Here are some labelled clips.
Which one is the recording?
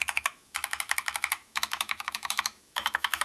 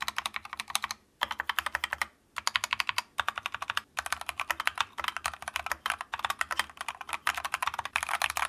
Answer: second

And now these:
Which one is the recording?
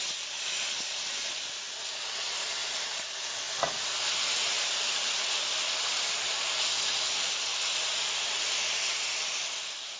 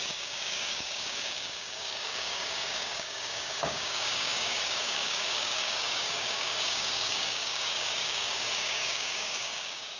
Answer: first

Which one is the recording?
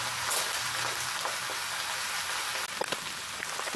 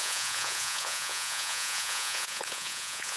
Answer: first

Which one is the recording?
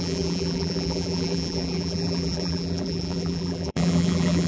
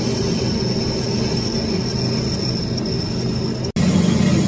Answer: second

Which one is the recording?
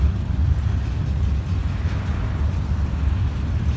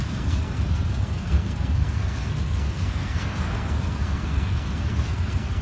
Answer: first